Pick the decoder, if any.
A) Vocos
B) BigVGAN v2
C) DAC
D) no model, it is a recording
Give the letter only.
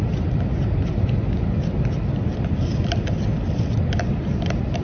D